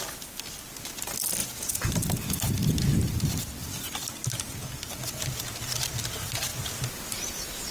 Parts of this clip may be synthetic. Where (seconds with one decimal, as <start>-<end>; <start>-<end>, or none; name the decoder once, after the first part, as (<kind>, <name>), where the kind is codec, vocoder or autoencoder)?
1.4-1.9 (vocoder, Vocos)

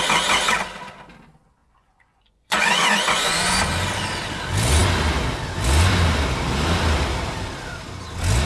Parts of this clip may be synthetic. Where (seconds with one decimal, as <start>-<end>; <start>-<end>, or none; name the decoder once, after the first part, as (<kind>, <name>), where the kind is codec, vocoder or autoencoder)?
1.6-3.6 (vocoder, Vocos)

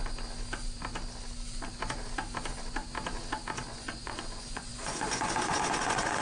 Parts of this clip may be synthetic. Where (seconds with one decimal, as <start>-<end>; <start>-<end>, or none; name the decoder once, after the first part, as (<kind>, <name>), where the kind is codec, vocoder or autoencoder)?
3.7-6.2 (vocoder, Vocos)